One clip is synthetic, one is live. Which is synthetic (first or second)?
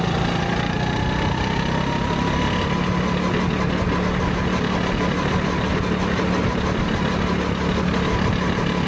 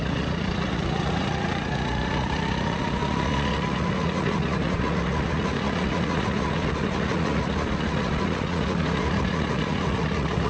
second